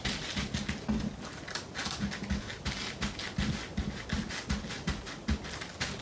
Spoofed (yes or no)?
no